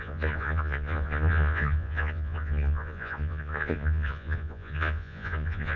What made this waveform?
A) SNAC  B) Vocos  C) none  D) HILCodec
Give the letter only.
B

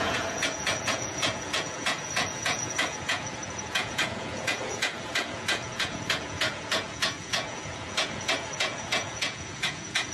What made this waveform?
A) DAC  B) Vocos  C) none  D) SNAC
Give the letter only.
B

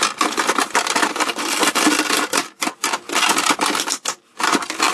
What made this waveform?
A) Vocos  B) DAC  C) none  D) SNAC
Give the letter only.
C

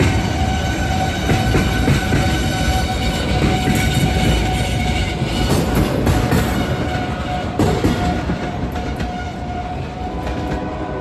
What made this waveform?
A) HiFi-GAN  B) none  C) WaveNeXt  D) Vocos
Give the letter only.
B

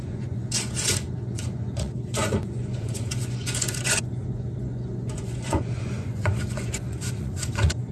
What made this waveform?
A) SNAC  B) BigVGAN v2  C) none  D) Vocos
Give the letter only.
D